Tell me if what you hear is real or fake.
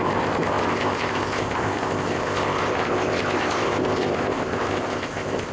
fake